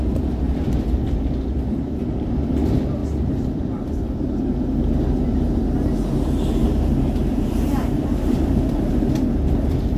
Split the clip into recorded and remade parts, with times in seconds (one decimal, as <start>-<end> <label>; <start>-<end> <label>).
0.0-7.2 recorded; 7.2-8.9 remade; 8.9-10.0 recorded